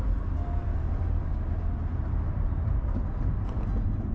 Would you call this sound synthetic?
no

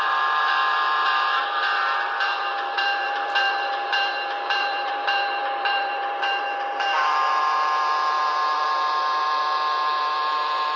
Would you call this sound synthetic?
yes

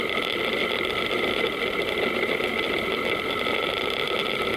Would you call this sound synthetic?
no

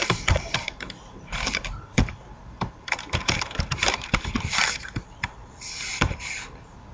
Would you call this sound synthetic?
yes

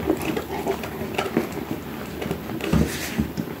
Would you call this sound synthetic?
no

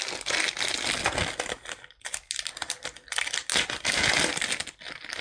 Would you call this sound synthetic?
no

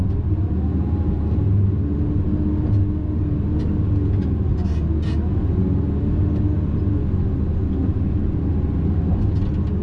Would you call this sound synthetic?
no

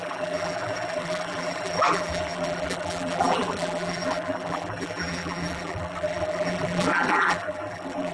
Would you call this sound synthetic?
yes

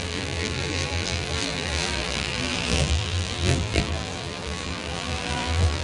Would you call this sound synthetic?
yes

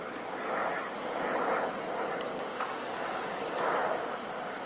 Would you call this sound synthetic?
no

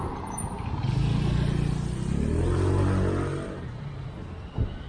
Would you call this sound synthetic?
no